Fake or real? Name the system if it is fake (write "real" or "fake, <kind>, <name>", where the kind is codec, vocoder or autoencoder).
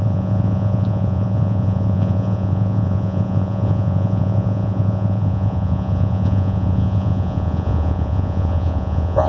fake, vocoder, Vocos